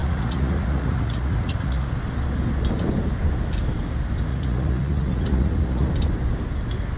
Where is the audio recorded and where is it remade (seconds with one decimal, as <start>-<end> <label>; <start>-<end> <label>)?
0.0-1.9 remade; 1.9-4.3 recorded; 4.3-5.9 remade; 5.9-7.0 recorded